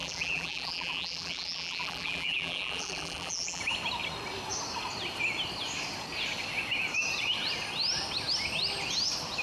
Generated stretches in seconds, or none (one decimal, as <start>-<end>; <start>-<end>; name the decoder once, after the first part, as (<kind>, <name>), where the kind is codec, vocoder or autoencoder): 0.0-3.6 (vocoder, BigVGAN v2)